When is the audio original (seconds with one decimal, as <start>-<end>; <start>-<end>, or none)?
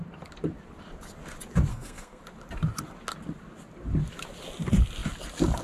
0.0-1.7; 2.2-5.6